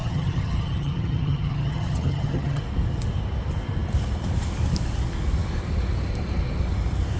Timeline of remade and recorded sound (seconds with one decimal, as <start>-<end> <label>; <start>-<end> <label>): 0.0-2.6 remade; 2.6-7.2 recorded